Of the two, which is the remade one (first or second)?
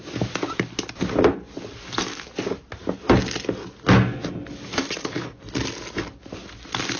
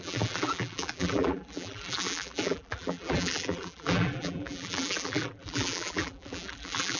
second